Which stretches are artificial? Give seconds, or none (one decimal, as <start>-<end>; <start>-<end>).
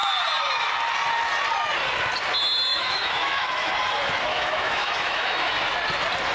2.7-3.7; 4.3-5.5